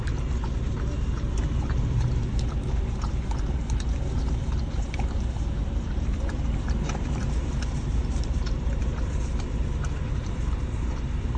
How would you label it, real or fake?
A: fake